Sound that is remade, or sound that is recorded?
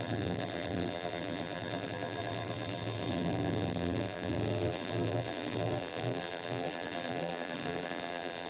remade